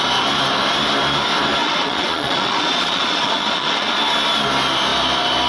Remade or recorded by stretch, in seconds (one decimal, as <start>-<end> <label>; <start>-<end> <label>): 0.0-1.6 recorded; 1.6-4.0 remade; 4.0-5.5 recorded